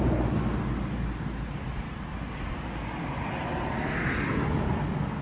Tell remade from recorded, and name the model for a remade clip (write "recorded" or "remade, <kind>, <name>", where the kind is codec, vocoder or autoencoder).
recorded